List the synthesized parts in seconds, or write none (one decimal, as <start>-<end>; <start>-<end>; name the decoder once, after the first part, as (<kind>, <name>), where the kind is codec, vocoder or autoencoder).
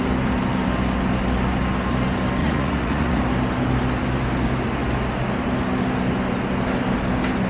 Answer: 2.4-3.2 (vocoder, Vocos)